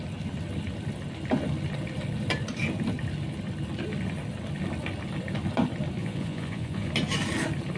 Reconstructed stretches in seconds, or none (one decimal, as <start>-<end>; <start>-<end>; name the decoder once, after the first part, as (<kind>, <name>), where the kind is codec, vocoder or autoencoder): 6.0-6.9 (vocoder, Vocos)